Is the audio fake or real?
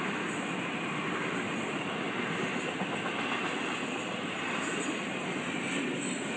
real